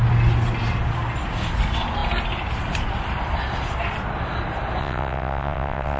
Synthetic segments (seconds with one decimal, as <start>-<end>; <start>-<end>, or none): 4.8-6.0